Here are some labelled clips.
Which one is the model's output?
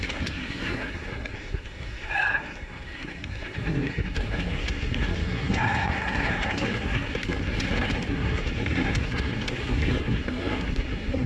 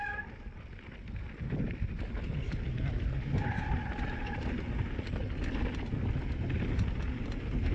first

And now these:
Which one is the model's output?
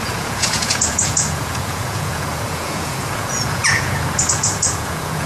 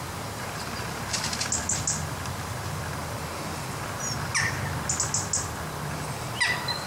first